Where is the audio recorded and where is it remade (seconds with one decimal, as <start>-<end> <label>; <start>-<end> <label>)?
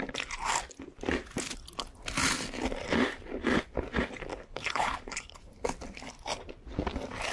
0.0-4.3 recorded; 4.3-5.4 remade; 5.4-7.3 recorded